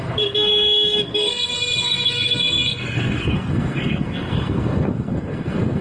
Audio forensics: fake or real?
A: fake